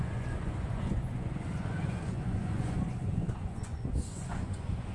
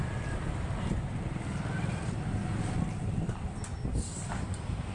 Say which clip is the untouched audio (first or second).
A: second